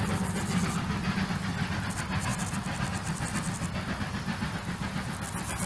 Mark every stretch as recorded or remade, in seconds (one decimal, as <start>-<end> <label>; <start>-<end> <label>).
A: 0.0-5.7 recorded